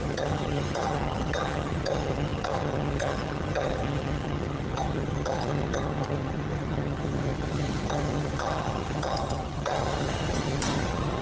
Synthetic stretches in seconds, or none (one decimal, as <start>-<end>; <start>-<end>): 0.0-11.2